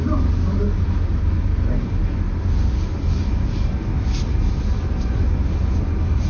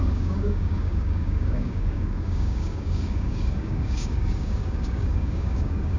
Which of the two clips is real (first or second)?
first